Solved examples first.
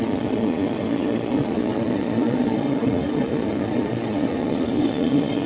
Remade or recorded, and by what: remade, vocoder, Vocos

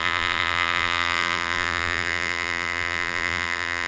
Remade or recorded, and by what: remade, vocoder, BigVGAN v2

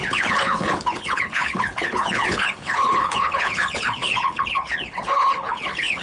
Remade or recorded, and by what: remade, codec, HILCodec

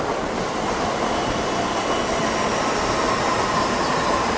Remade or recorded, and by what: recorded